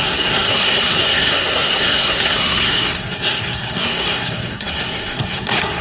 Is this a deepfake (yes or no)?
yes